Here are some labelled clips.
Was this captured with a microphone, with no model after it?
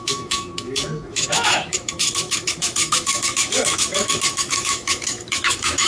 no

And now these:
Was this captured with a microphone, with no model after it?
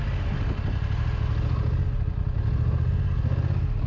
yes